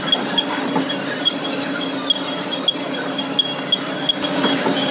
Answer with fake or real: real